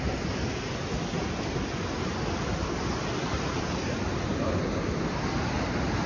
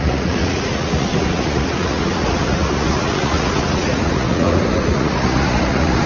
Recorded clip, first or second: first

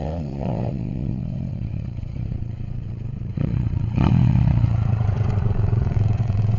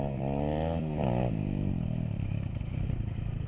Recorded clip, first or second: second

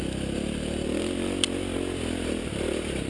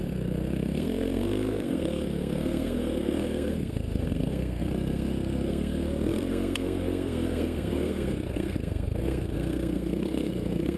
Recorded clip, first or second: first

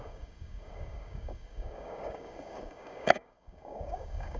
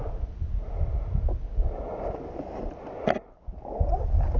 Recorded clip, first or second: second